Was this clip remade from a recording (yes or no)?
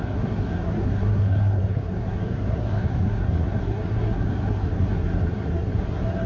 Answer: yes